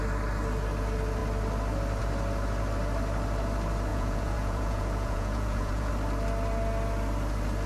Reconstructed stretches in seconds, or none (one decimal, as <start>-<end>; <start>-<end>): 3.9-5.9